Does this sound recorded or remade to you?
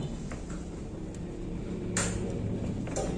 recorded